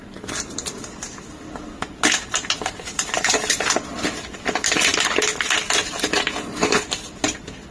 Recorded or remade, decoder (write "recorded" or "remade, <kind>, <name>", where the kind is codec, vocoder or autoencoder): recorded